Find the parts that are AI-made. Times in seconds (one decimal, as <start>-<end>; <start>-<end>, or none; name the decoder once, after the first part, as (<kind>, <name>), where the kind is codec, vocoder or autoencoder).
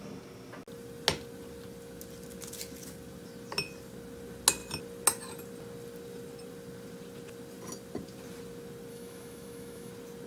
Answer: 8.9-9.9 (autoencoder, DAC-VAE)